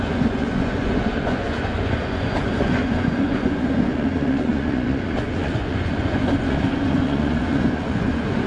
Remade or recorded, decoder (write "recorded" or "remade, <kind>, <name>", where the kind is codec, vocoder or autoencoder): remade, vocoder, Vocos